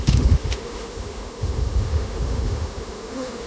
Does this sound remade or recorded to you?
remade